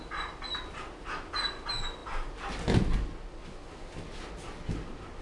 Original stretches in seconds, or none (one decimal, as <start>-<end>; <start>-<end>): 0.0-5.2